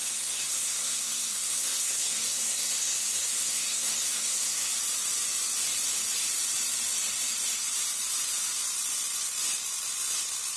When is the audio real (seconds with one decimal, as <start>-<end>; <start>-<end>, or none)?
4.7-10.6